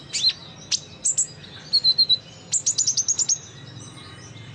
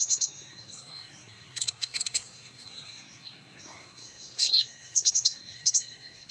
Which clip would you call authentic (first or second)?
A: first